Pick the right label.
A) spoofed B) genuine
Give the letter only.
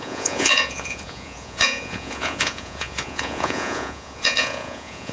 A